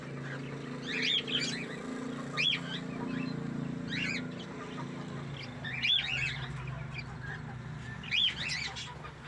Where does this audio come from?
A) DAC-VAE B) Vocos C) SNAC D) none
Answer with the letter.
D